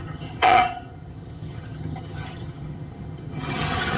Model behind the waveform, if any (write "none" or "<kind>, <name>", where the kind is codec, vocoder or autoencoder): vocoder, HiFi-GAN